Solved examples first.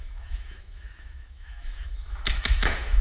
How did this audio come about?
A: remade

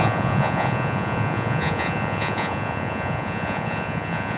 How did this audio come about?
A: remade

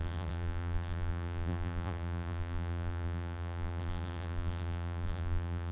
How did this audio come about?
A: remade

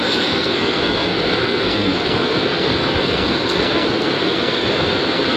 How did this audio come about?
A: remade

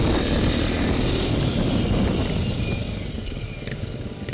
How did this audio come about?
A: recorded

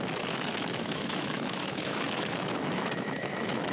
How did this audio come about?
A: remade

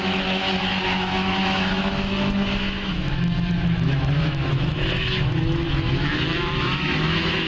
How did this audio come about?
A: remade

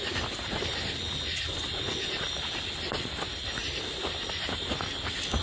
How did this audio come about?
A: recorded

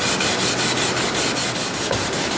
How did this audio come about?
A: recorded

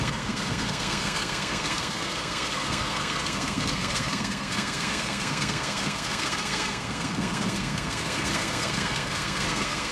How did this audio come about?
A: remade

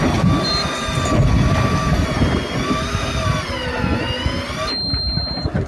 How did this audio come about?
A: recorded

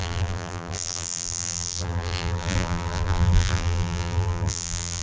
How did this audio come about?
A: remade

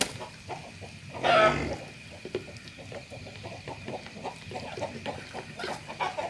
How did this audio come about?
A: recorded